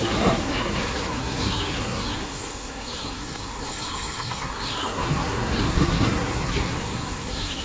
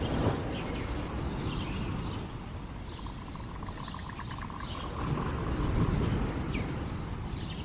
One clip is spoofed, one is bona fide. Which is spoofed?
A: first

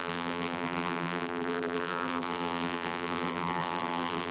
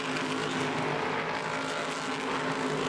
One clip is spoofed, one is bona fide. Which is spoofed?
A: first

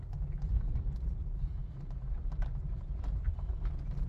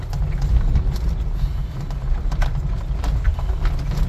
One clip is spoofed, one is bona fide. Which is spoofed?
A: first